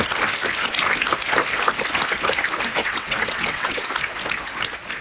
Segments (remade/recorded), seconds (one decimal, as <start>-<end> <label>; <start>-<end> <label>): 0.0-2.8 recorded; 2.8-3.9 remade; 3.9-5.0 recorded